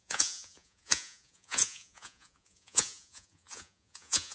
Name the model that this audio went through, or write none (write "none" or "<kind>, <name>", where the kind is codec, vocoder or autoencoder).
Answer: vocoder, Vocos